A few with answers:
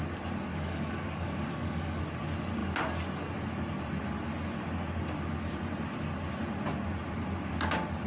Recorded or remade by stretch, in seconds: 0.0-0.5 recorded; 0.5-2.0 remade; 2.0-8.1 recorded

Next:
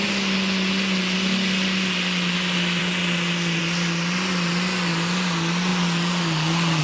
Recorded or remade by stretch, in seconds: 0.0-6.8 recorded

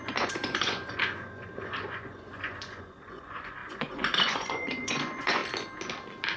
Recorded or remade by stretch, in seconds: 0.0-5.4 remade; 5.4-6.4 recorded

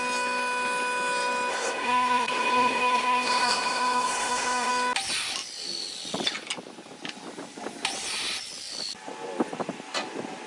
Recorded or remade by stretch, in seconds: 0.0-1.5 recorded; 1.5-4.7 remade; 4.7-10.5 recorded

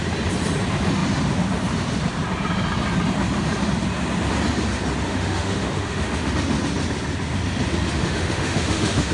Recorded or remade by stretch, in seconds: 0.0-5.1 recorded; 5.1-6.3 remade; 6.3-8.0 recorded; 8.0-9.1 remade

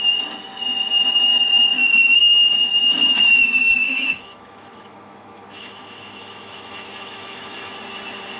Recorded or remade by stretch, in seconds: 0.0-1.3 recorded; 1.3-2.2 remade; 2.2-3.6 recorded; 3.6-7.8 remade; 7.8-8.4 recorded

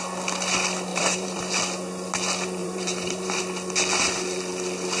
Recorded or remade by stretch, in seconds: 0.0-0.9 recorded; 0.9-1.4 remade; 1.4-2.6 recorded; 2.6-3.4 remade; 3.4-5.0 recorded